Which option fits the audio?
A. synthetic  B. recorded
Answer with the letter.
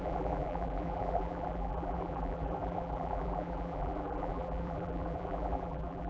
A